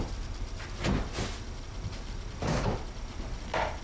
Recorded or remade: recorded